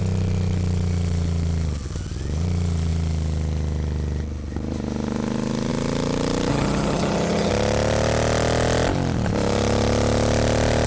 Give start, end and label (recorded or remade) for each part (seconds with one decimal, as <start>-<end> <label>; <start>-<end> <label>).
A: 0.0-6.5 recorded; 6.5-7.5 remade; 7.5-10.9 recorded